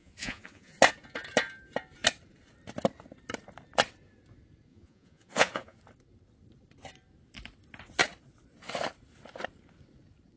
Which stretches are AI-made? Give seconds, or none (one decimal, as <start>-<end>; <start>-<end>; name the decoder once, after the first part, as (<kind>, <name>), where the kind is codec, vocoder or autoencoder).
0.0-0.8 (vocoder, Vocos); 4.7-5.8